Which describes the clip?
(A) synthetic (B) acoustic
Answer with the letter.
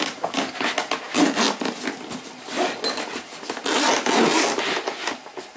B